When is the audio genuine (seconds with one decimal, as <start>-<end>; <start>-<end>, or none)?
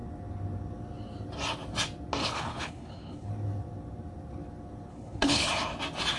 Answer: 0.0-2.2; 3.3-4.9; 5.5-6.2